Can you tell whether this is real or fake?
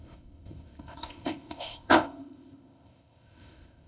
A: fake